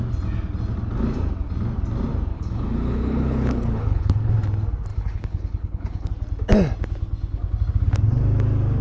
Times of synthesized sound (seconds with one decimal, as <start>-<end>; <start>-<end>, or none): 2.3-4.3; 4.9-6.1